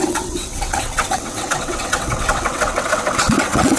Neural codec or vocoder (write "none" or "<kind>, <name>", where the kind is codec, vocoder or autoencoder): vocoder, WaveNeXt